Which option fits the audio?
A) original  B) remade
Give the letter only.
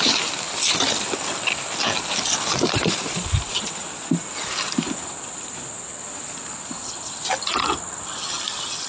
A